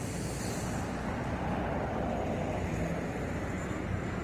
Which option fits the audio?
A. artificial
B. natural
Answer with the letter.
B